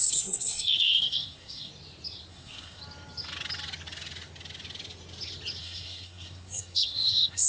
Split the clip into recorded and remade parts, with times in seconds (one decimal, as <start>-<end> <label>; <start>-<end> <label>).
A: 0.0-1.7 remade; 1.7-2.3 recorded; 2.3-2.8 remade; 2.8-5.6 recorded; 5.6-7.5 remade